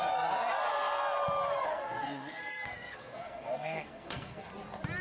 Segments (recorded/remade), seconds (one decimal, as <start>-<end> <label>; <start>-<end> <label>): 0.0-1.6 recorded; 1.6-4.5 remade; 4.5-5.0 recorded